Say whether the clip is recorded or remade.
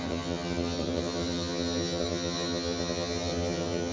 remade